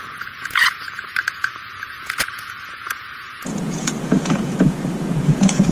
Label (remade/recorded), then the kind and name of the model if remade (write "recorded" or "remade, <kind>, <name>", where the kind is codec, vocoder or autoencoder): remade, vocoder, Vocos